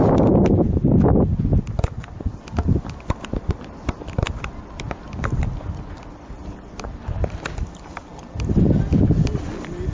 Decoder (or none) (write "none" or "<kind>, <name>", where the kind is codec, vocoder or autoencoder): none